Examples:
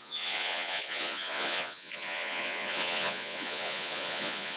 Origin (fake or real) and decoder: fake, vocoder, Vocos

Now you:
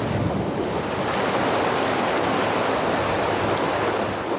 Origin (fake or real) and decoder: real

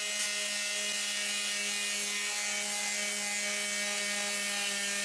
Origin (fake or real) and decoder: real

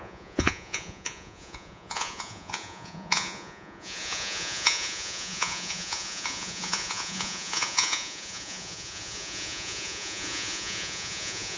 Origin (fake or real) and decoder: fake, vocoder, Vocos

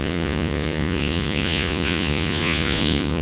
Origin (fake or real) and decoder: fake, vocoder, Vocos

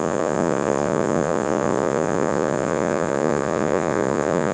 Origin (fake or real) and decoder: fake, vocoder, Vocos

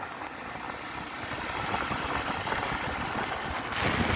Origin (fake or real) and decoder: real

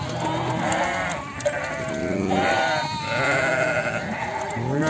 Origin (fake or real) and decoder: real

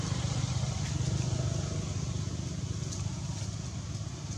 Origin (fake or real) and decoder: real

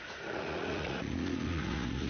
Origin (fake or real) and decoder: fake, vocoder, Vocos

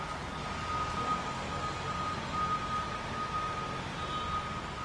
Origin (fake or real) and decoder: real